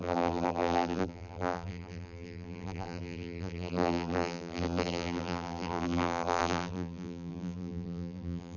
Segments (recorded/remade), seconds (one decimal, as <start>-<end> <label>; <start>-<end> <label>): 0.0-8.6 remade